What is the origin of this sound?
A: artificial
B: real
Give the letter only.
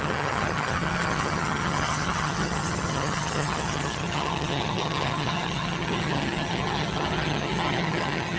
A